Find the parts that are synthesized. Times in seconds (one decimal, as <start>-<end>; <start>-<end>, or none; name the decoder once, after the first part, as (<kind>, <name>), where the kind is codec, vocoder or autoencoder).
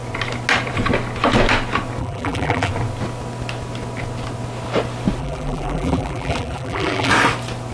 2.0-2.7 (vocoder, BigVGAN v2); 5.2-7.1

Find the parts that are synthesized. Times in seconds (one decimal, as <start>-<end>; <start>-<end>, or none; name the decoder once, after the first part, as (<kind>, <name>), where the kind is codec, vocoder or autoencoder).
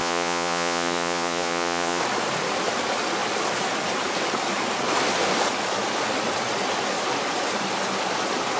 0.0-2.0 (vocoder, Vocos)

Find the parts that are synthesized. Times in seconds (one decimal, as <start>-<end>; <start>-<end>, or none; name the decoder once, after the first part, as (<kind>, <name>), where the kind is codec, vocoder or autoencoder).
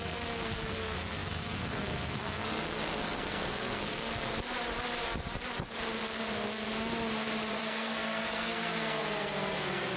0.0-4.3 (codec, SNAC); 7.6-10.0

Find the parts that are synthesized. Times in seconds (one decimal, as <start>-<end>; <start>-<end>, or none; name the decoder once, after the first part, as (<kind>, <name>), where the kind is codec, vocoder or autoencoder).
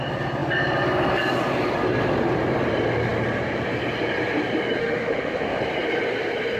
4.8-5.6 (autoencoder, DAC-VAE)